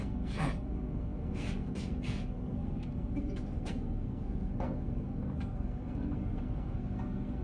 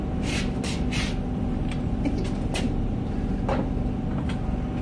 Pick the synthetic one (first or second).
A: first